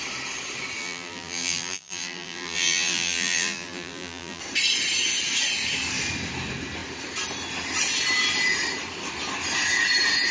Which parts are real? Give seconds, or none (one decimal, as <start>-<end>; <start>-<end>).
0.0-0.8; 4.4-10.3